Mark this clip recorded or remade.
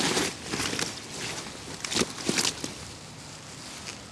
recorded